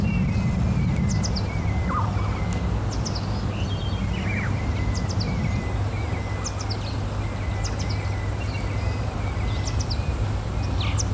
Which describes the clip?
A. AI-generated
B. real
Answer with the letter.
B